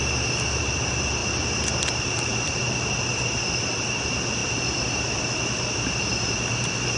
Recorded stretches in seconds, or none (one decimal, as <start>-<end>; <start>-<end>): 0.0-2.3; 3.1-4.4; 5.6-7.0